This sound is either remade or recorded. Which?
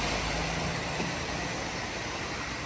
recorded